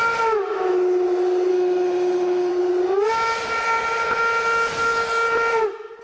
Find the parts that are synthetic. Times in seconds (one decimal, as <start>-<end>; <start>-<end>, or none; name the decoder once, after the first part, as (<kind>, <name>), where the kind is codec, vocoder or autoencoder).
1.5-2.5 (autoencoder, DAC-VAE)